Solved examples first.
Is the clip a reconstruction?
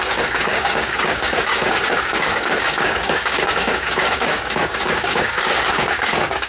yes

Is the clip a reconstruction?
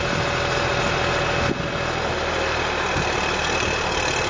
no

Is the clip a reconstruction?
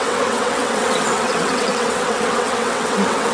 yes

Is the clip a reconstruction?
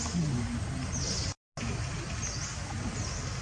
no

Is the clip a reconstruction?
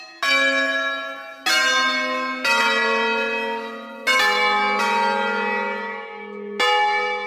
no